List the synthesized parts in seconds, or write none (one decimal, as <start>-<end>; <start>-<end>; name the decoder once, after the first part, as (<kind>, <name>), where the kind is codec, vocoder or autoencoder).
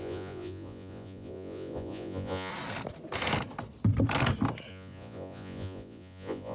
0.0-2.5 (vocoder, Vocos); 4.7-6.5